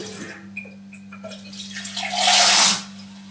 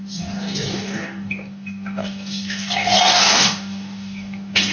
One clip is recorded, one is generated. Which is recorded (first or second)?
first